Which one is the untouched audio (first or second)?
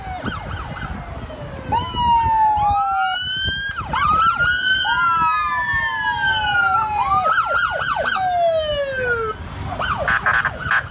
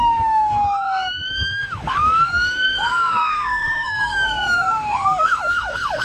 first